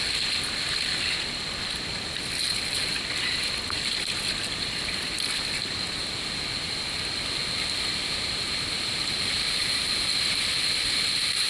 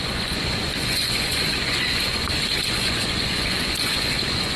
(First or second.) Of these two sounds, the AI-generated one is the second